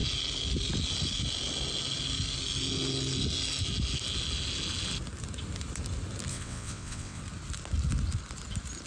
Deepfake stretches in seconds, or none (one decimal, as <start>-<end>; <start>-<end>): 6.3-7.2